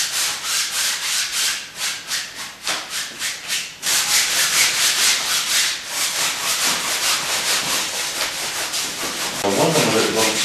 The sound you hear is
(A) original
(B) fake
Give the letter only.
A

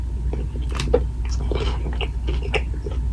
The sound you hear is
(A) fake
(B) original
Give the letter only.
B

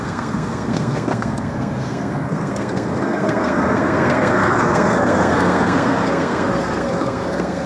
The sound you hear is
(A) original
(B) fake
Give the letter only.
B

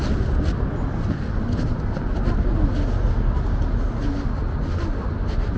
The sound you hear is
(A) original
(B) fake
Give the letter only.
A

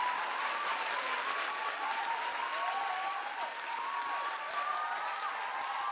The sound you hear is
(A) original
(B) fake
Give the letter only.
A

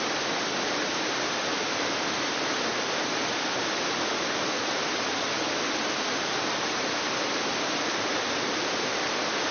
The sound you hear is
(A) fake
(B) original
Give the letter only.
B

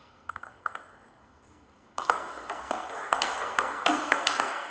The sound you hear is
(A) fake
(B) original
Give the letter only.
A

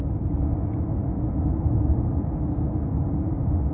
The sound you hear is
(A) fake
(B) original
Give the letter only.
B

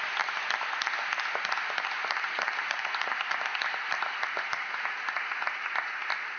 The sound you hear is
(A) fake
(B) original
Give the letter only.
B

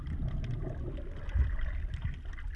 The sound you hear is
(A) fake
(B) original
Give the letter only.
B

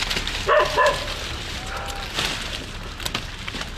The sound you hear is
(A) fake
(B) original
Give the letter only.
B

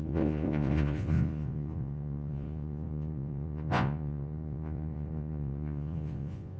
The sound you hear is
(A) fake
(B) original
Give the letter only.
A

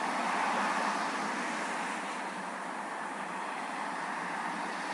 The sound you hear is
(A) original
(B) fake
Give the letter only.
A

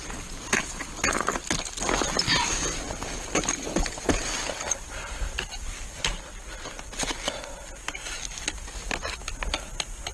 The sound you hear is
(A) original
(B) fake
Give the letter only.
A